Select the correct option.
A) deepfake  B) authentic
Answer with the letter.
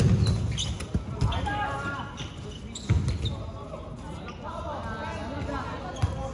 B